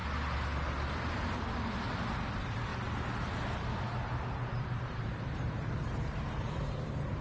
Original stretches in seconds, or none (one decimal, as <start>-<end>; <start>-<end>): 0.0-2.1; 2.7-4.8